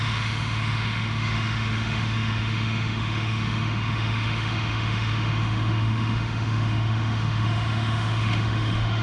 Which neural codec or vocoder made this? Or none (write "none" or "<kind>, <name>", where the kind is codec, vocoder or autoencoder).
autoencoder, DAC-VAE